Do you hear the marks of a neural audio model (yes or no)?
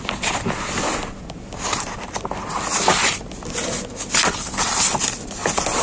no